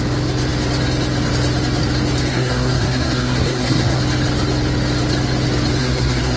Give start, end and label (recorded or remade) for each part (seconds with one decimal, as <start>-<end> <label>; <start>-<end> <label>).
0.0-2.3 recorded; 2.3-4.0 remade; 4.0-5.8 recorded; 5.8-6.4 remade

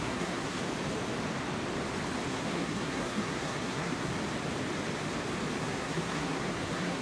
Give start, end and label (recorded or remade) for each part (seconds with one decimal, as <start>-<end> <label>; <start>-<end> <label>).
0.0-0.6 remade; 0.6-2.3 recorded; 2.3-4.1 remade; 4.1-5.6 recorded; 5.6-7.0 remade

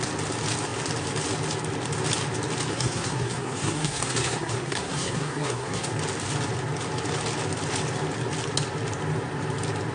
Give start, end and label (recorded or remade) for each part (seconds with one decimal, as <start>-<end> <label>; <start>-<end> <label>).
0.0-2.7 recorded; 2.7-5.9 remade; 5.9-9.9 recorded

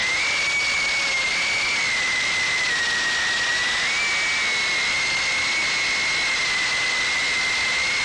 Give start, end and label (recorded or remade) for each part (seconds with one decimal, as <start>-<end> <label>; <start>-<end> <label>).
0.0-8.0 recorded

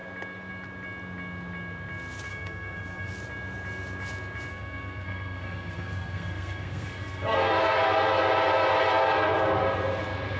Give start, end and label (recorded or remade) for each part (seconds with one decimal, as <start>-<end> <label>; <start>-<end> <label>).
0.0-2.3 recorded; 2.3-3.1 remade; 3.1-4.5 recorded; 4.5-7.5 remade; 7.5-10.4 recorded

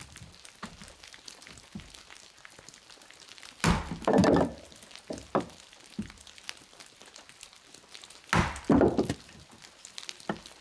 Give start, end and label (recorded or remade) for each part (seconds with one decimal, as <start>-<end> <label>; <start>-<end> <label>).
0.0-10.6 recorded